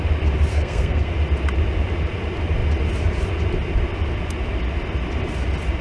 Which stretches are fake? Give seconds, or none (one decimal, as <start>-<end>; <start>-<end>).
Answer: 0.5-1.1